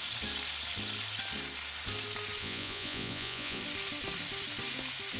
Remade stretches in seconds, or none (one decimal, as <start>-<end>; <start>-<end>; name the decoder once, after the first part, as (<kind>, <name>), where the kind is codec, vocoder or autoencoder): 2.4-3.6 (vocoder, Vocos)